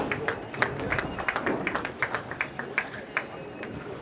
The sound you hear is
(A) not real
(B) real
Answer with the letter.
B